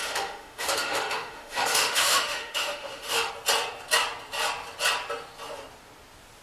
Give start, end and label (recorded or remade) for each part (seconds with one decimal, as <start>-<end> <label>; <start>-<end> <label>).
0.0-3.3 remade; 3.3-6.4 recorded